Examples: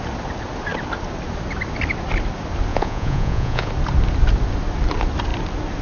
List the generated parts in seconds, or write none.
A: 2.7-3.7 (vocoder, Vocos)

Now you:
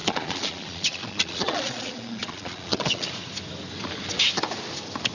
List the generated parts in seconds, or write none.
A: 0.0-3.1 (vocoder, Vocos)

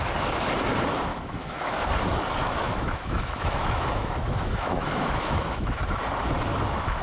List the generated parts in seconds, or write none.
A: 1.1-1.7 (autoencoder, DAC-VAE); 2.4-5.8